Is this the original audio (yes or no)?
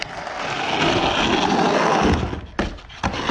yes